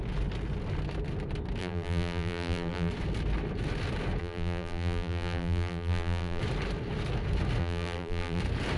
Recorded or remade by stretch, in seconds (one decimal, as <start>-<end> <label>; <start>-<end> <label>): 0.0-1.6 recorded; 1.6-2.9 remade; 2.9-4.2 recorded; 4.2-6.4 remade; 6.4-7.6 recorded; 7.6-8.4 remade; 8.4-8.8 recorded